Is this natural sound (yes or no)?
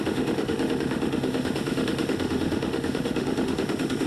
no